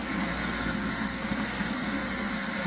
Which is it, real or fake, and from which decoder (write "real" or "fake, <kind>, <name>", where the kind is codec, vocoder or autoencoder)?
fake, codec, SNAC